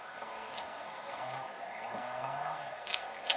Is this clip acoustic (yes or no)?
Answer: no